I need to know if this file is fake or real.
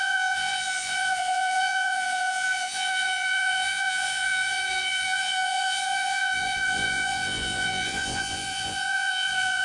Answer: fake